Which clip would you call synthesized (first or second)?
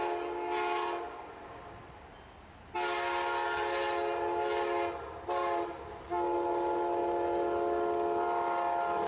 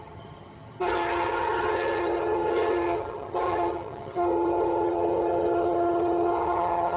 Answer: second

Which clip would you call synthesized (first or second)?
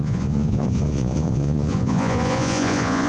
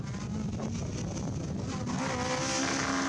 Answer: first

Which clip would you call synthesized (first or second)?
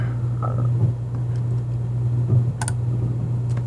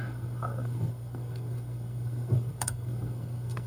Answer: second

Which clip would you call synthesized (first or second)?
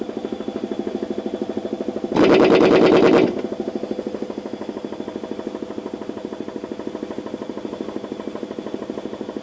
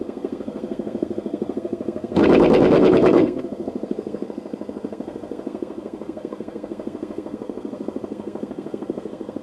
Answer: second